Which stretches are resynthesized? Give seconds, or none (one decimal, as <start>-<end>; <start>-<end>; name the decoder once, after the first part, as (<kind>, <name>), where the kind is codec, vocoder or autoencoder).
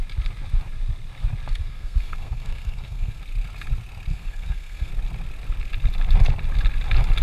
1.6-3.2 (codec, SNAC); 4.1-4.9